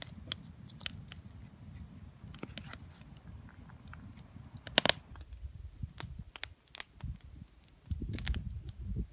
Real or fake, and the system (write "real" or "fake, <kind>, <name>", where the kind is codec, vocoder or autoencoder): real